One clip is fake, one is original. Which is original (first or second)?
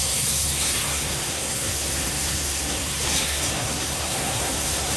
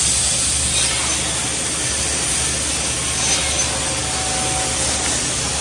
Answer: second